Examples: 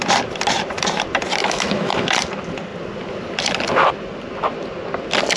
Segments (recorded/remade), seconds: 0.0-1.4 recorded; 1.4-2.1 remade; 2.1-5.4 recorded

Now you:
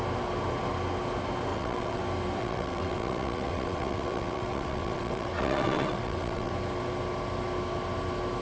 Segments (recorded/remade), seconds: 0.0-1.5 recorded; 1.5-2.0 remade; 2.0-2.4 recorded; 2.4-6.5 remade; 6.5-8.4 recorded

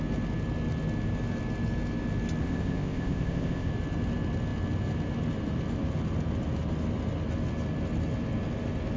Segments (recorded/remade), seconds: 0.0-2.4 recorded; 2.4-3.7 remade; 3.7-9.0 recorded

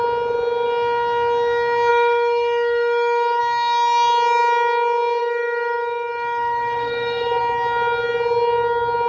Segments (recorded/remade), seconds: 0.0-1.9 recorded; 1.9-3.4 remade; 3.4-5.2 recorded; 5.2-7.4 remade; 7.4-9.1 recorded

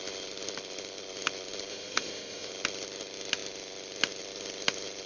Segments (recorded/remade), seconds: 0.0-1.7 recorded; 1.7-2.5 remade; 2.5-5.1 recorded

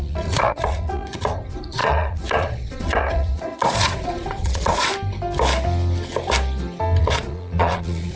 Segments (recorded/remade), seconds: 0.0-4.9 remade; 4.9-7.0 recorded; 7.0-8.2 remade